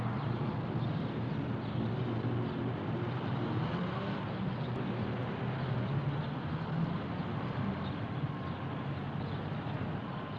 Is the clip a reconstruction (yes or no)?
no